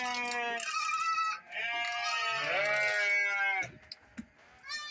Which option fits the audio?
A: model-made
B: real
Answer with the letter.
B